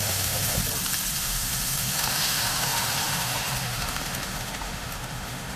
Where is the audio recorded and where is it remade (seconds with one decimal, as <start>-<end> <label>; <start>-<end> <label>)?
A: 0.0-0.6 remade; 0.6-1.2 recorded; 1.2-5.6 remade